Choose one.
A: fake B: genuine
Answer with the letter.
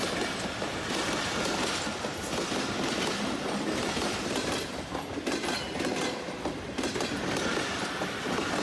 B